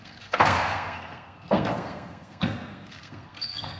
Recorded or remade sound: remade